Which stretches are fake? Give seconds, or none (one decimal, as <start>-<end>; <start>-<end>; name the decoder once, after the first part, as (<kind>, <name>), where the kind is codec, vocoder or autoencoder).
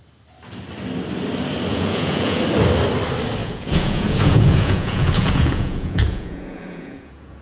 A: 1.7-2.4 (vocoder, Vocos); 3.4-7.4